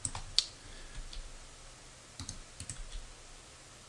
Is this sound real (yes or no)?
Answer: yes